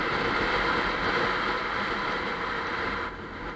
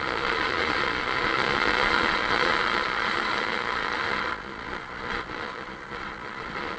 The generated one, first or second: second